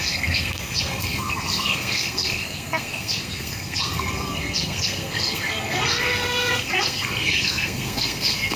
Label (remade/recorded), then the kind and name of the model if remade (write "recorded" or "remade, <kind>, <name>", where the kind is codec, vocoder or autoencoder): remade, codec, SNAC